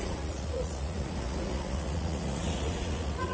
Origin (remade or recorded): remade